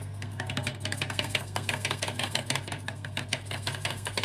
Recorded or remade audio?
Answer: remade